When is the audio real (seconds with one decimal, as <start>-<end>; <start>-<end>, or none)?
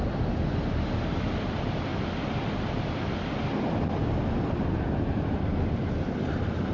1.9-4.7